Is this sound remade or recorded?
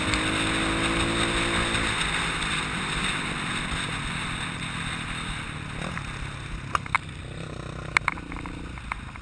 recorded